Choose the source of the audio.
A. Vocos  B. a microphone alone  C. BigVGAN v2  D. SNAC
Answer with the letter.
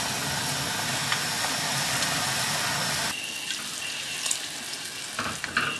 B